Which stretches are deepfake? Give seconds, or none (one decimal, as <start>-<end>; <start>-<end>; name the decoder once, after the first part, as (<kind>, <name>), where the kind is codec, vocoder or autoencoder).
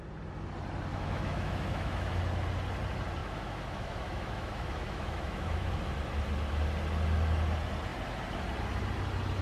0.9-2.2 (autoencoder, DAC-VAE); 3.2-5.8